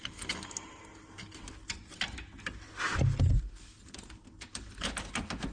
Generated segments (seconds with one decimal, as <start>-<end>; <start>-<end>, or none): none